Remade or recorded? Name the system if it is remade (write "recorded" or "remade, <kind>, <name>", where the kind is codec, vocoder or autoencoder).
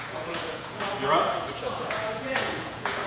remade, vocoder, Vocos